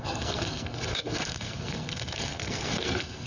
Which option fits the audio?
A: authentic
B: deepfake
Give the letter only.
B